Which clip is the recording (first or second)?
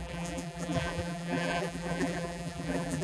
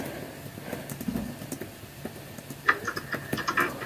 second